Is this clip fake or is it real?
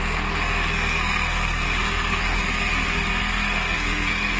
fake